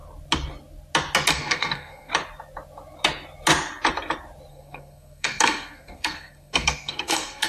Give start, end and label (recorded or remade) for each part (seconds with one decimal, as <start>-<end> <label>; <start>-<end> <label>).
0.0-1.3 recorded; 1.3-2.1 remade; 2.1-4.5 recorded; 4.5-7.5 remade